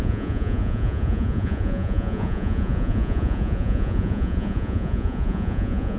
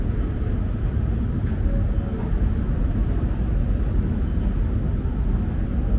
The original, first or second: second